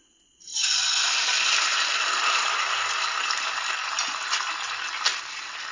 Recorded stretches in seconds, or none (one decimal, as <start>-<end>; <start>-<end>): 0.0-5.7